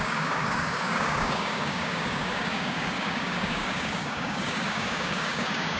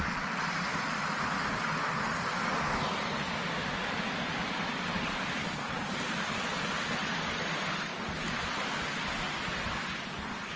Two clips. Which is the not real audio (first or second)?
first